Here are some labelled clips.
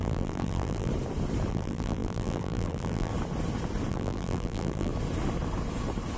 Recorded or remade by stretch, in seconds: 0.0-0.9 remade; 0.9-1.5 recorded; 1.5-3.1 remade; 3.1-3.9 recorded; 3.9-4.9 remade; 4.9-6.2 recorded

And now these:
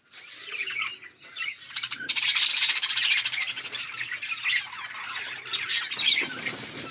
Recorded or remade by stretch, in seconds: 0.0-2.3 recorded; 2.3-3.6 remade; 3.6-6.9 recorded